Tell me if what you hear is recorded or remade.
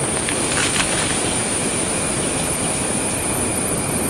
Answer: recorded